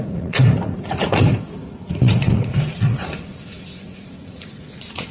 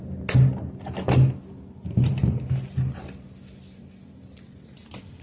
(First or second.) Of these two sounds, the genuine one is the second